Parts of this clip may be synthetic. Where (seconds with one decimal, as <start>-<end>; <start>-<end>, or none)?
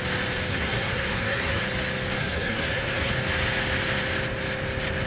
0.5-1.6; 2.2-3.1